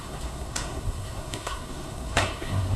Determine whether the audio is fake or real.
fake